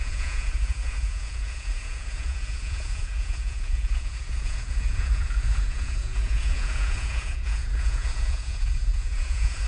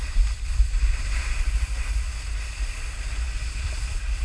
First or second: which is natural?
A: second